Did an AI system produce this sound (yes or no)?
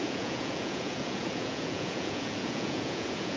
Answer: yes